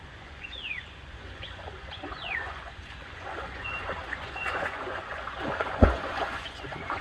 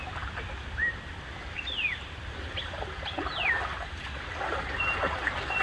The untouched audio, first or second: second